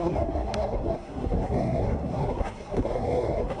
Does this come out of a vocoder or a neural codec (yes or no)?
yes